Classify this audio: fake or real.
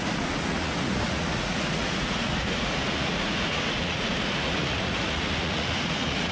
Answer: fake